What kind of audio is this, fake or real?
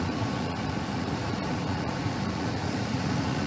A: fake